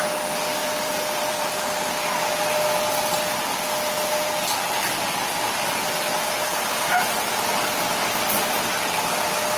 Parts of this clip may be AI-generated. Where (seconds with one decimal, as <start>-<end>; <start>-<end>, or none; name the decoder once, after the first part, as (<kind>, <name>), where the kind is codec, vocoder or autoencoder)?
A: 0.6-1.5 (vocoder, BigVGAN v2)